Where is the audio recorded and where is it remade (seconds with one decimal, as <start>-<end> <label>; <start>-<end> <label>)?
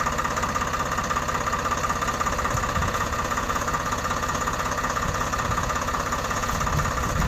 0.0-2.8 recorded; 2.8-6.6 remade; 6.6-7.3 recorded